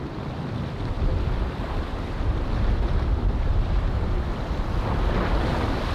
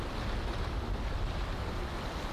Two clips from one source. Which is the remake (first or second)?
first